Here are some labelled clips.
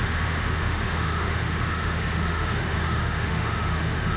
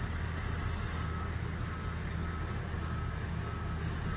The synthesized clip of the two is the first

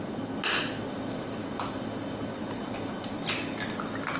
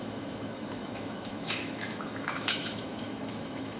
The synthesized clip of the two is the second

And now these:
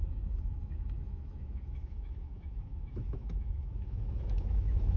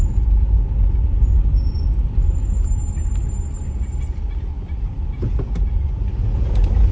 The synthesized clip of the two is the first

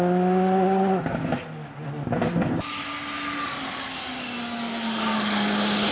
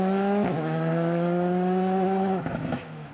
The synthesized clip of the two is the second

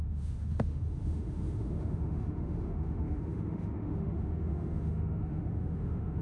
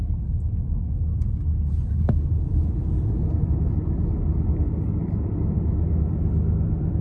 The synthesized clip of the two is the first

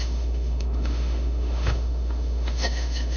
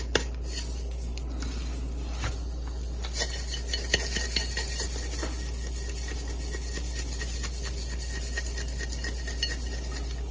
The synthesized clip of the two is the first